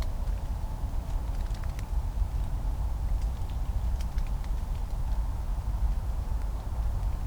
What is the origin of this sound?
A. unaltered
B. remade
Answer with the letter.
A